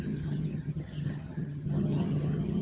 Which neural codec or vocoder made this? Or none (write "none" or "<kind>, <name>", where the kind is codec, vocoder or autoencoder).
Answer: vocoder, HiFi-GAN